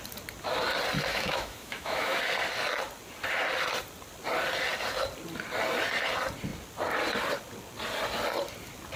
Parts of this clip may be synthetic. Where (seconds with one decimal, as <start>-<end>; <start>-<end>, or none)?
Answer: 1.1-2.2